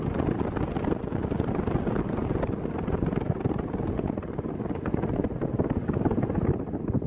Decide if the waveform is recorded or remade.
recorded